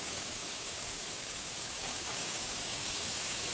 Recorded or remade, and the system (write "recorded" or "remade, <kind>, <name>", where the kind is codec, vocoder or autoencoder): remade, codec, DAC